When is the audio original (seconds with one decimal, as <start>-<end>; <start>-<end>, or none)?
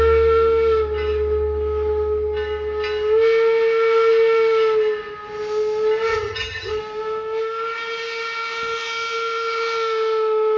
0.0-6.1; 6.8-10.6